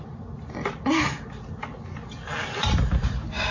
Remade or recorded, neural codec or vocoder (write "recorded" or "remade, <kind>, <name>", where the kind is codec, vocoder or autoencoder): recorded